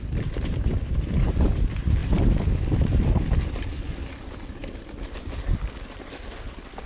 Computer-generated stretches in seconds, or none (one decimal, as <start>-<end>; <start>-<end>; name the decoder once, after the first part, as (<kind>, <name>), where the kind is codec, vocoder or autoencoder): 0.0-2.0 (vocoder, BigVGAN v2); 2.8-4.6; 6.5-6.9